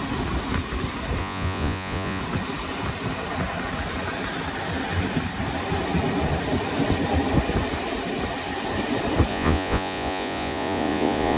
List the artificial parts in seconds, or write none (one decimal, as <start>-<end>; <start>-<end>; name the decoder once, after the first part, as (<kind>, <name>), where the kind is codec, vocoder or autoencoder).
1.2-2.2 (vocoder, Vocos); 9.3-11.4